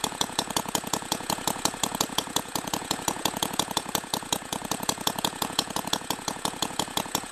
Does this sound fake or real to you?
fake